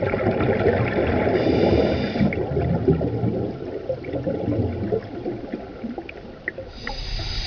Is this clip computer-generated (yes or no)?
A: no